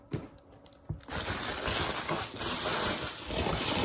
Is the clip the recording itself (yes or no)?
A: yes